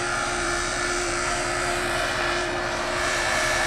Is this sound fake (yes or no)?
yes